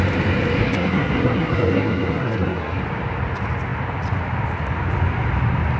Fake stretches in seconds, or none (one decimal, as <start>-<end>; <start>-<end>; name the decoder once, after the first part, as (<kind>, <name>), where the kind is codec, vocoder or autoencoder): 0.6-2.8 (codec, SNAC)